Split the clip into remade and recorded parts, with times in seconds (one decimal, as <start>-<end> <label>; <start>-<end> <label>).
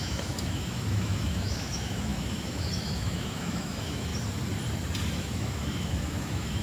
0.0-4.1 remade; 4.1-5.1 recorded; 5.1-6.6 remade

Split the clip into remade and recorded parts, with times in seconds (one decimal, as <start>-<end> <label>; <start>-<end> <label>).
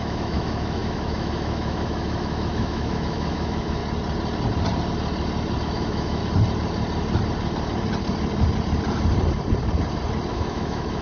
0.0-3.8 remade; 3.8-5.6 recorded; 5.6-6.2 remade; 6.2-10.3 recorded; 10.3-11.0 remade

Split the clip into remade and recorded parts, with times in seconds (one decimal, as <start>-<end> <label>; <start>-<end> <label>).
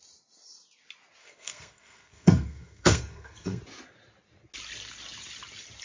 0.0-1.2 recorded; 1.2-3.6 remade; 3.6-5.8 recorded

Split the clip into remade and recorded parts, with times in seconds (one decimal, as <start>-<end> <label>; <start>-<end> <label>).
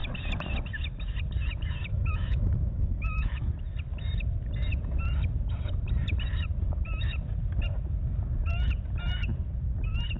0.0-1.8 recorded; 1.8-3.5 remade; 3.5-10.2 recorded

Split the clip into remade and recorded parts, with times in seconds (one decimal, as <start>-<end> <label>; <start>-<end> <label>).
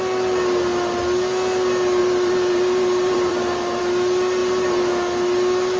0.0-2.0 recorded; 2.0-3.8 remade; 3.8-4.4 recorded; 4.4-4.9 remade; 4.9-5.8 recorded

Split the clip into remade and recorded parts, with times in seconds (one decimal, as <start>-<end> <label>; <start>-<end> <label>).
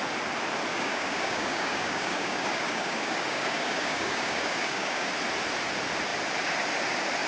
0.0-0.7 recorded; 0.7-5.1 remade; 5.1-7.3 recorded